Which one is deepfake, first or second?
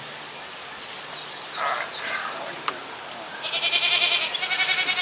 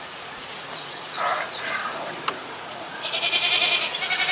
second